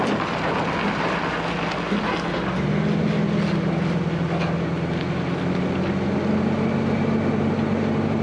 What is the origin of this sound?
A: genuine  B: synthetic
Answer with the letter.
A